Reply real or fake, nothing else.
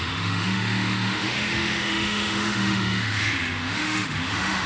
fake